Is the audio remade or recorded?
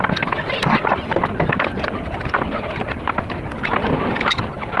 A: recorded